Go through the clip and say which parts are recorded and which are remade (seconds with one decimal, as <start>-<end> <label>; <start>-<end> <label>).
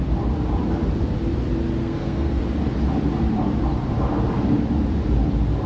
0.0-1.8 recorded; 1.8-2.4 remade; 2.4-5.7 recorded